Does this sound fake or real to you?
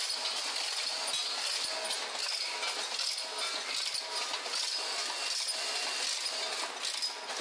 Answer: real